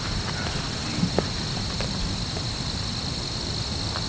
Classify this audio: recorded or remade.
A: recorded